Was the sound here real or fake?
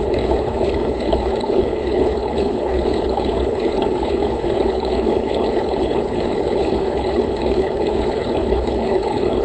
fake